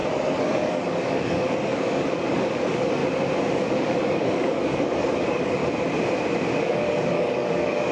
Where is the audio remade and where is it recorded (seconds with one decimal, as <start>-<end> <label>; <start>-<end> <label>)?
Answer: 0.0-3.0 remade; 3.0-3.5 recorded; 3.5-5.6 remade; 5.6-6.6 recorded; 6.6-7.9 remade